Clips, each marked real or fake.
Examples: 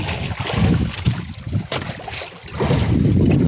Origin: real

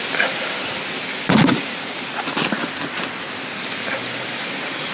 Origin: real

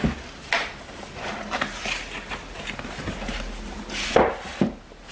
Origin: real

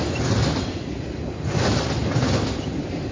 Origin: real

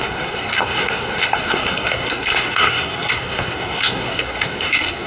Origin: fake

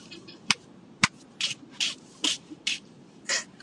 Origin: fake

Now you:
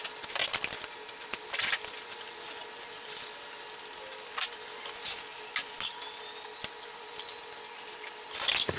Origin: real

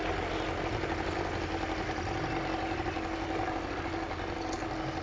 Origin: real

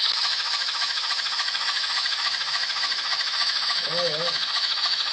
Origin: fake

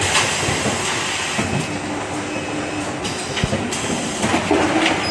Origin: real